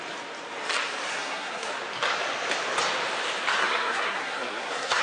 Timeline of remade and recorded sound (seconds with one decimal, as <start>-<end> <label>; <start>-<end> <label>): 0.0-1.1 recorded; 1.1-1.7 remade; 1.7-3.6 recorded; 3.6-5.0 remade